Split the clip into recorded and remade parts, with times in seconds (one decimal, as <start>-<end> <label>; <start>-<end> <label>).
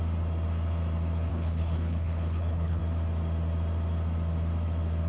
0.0-1.3 recorded; 1.3-2.8 remade; 2.8-5.1 recorded